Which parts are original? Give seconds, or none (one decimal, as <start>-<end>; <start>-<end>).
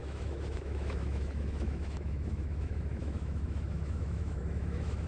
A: none